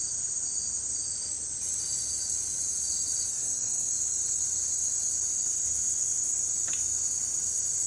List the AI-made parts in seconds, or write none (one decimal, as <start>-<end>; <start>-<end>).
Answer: 3.3-3.9